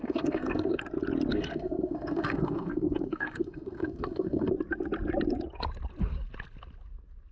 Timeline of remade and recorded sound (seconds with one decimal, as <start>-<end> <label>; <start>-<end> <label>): 0.0-0.8 remade; 0.8-1.3 recorded; 1.3-4.5 remade; 4.5-7.3 recorded